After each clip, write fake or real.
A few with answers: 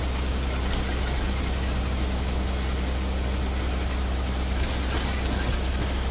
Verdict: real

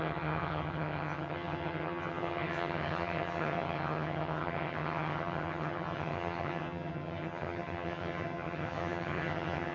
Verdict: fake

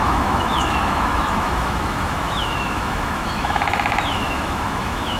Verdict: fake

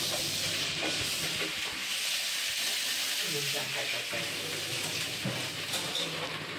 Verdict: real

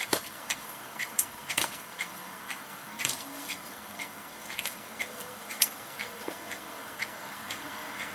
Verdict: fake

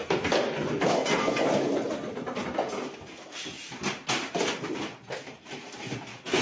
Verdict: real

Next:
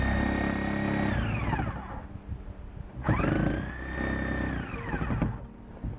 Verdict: real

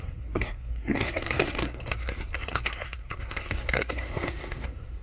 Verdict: fake